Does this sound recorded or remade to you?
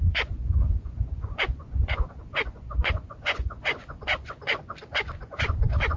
remade